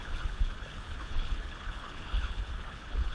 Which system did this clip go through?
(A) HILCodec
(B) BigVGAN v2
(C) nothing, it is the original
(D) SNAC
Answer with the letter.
A